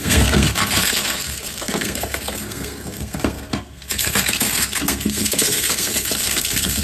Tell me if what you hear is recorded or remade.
remade